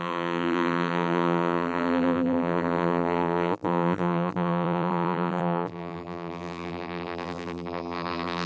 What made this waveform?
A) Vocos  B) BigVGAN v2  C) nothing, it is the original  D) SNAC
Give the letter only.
B